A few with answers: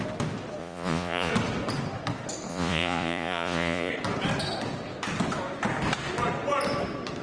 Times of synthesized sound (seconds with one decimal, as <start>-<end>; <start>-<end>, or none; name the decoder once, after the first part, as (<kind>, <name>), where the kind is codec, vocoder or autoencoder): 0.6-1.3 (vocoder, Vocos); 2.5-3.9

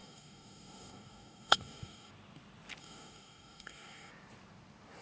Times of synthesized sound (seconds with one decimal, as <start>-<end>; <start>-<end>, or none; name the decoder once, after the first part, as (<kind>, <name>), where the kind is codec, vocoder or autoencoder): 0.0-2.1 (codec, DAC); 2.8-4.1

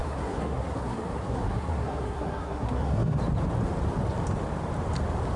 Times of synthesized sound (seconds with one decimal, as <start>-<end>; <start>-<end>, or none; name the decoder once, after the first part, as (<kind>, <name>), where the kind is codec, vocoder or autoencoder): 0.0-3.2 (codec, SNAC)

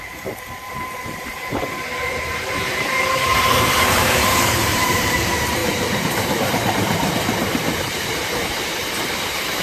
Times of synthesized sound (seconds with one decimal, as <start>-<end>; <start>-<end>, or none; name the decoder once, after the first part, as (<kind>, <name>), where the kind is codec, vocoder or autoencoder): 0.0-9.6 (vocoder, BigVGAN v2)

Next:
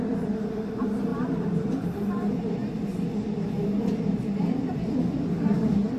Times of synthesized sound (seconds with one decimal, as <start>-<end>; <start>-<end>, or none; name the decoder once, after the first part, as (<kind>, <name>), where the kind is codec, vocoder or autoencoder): 1.1-1.7 (vocoder, BigVGAN v2)